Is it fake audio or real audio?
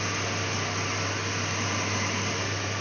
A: real